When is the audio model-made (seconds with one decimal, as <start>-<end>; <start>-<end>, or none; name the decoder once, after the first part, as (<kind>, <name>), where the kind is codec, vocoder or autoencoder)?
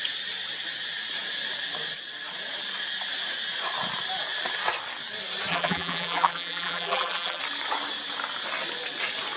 5.5-7.4 (vocoder, BigVGAN v2)